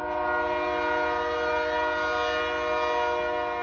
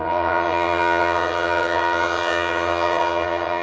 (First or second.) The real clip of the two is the first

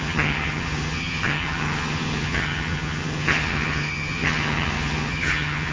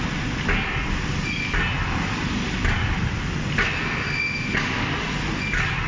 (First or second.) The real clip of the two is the second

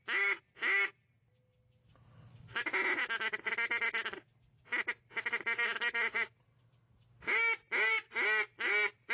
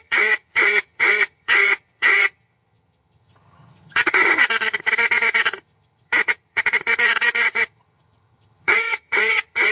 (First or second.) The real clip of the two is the first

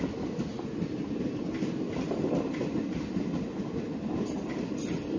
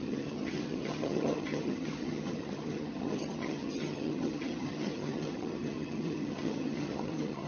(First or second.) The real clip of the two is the first